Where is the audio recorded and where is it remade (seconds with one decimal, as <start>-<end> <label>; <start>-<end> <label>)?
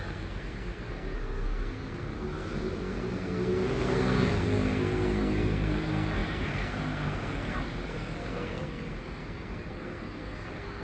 0.0-10.8 remade